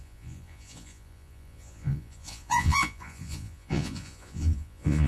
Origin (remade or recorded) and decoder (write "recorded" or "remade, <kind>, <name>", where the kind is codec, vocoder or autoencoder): remade, vocoder, Vocos